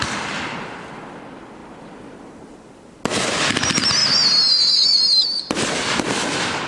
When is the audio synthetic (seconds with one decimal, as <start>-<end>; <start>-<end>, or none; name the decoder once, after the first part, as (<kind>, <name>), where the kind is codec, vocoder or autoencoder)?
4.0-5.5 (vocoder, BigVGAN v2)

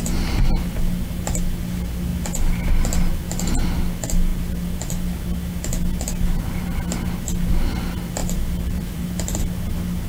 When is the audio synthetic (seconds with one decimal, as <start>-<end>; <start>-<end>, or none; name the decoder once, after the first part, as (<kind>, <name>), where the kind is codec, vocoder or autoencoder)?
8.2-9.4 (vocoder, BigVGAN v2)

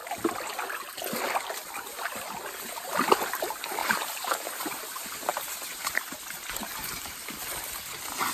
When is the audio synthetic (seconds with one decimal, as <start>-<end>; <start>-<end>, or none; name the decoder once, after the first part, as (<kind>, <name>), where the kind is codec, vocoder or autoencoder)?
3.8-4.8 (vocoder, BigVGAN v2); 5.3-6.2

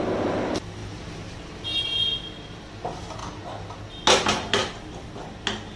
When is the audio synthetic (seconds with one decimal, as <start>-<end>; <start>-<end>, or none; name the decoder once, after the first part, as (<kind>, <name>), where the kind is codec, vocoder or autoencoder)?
3.2-4.0 (vocoder, BigVGAN v2)

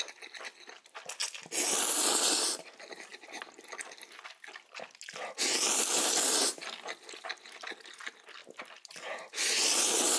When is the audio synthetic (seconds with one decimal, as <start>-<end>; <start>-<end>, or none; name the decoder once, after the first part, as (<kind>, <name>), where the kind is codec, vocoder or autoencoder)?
none

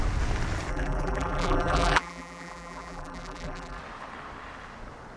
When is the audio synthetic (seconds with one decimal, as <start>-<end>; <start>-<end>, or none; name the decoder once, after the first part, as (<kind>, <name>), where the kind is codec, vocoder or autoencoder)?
0.7-3.8 (vocoder, BigVGAN v2)

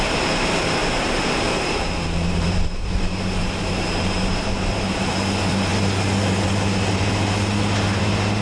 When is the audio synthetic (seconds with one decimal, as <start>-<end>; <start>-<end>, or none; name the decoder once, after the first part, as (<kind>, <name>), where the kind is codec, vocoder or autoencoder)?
0.8-5.0 (vocoder, BigVGAN v2)

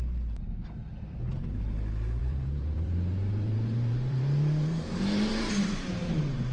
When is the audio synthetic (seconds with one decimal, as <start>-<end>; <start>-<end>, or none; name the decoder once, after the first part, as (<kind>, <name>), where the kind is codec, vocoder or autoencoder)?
2.2-6.1 (vocoder, BigVGAN v2)